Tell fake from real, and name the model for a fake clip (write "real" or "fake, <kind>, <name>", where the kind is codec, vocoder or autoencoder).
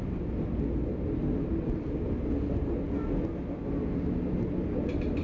real